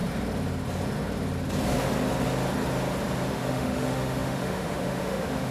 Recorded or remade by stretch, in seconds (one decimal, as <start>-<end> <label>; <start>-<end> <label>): 0.0-3.3 recorded; 3.3-5.5 remade

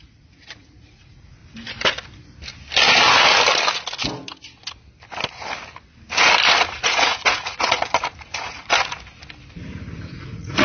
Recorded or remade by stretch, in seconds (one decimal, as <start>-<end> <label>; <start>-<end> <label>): 0.0-1.4 remade; 1.4-6.5 recorded; 6.5-8.7 remade; 8.7-10.1 recorded; 10.1-10.6 remade

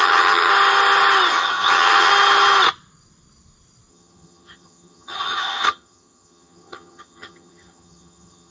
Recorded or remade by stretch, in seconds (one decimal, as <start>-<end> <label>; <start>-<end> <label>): 0.0-0.5 remade; 0.5-1.3 recorded; 1.3-2.1 remade; 2.1-3.9 recorded; 3.9-8.5 remade